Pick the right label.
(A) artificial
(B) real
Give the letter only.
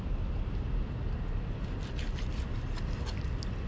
B